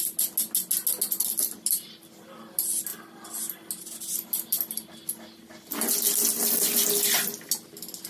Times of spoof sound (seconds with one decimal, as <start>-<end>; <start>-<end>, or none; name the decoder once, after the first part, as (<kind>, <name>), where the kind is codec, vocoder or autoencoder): none